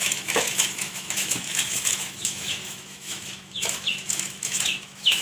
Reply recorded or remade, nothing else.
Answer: remade